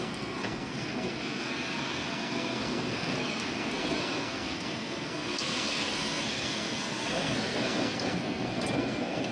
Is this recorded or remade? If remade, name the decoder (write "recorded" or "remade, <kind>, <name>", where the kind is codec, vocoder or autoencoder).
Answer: remade, codec, SNAC